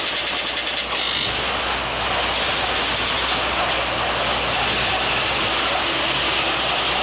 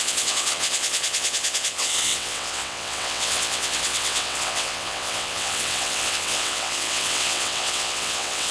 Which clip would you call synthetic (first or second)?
second